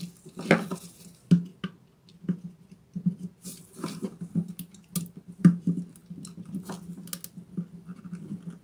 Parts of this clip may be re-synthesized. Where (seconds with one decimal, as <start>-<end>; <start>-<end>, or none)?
none